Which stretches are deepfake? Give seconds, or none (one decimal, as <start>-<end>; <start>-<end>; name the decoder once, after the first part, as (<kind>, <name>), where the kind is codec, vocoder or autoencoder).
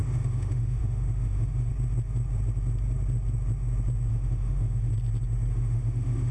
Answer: 0.0-1.7 (autoencoder, DAC-VAE); 4.1-4.9; 5.5-6.3